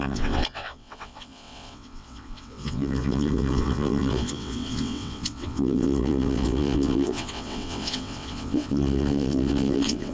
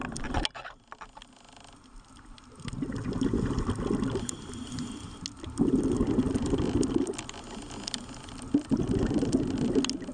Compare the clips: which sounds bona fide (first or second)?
second